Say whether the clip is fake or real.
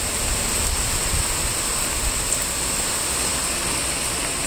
real